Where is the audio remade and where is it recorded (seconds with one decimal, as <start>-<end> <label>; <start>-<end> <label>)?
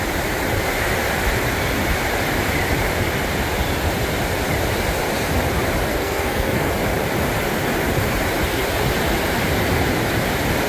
0.0-5.9 recorded; 5.9-6.7 remade; 6.7-10.7 recorded